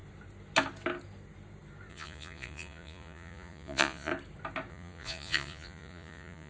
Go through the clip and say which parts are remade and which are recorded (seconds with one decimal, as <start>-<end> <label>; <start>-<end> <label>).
0.0-1.9 recorded; 1.9-4.1 remade; 4.1-4.7 recorded; 4.7-6.5 remade